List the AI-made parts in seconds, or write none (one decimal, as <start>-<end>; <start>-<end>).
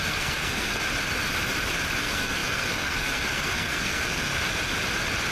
0.0-0.8; 2.0-4.3